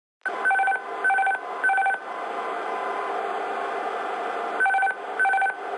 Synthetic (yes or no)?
no